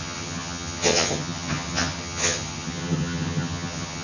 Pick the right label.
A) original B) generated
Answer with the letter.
B